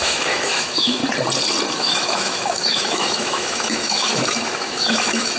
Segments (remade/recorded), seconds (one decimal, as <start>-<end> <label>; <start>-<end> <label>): 0.0-1.0 remade; 1.0-1.7 recorded; 1.7-5.4 remade